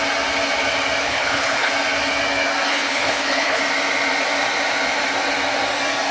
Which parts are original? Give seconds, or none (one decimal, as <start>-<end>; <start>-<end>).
0.0-1.0; 1.7-2.7; 3.6-6.1